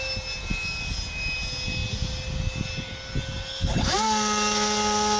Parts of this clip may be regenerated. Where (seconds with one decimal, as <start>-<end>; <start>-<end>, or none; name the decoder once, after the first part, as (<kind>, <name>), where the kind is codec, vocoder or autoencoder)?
none